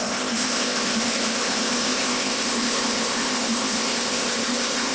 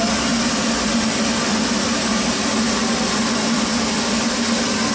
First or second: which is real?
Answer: second